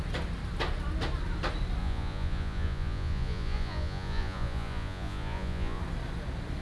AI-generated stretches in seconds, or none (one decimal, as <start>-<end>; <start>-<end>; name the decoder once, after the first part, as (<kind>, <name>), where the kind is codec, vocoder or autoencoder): 1.8-5.8 (vocoder, Vocos)